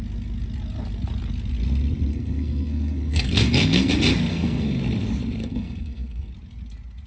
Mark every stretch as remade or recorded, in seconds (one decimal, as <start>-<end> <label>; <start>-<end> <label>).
0.0-2.1 recorded; 2.1-3.9 remade; 3.9-4.3 recorded; 4.3-4.8 remade; 4.8-5.4 recorded; 5.4-6.3 remade; 6.3-7.1 recorded